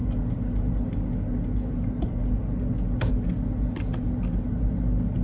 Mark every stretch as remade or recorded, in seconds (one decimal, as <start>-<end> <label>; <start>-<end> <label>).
0.0-5.2 recorded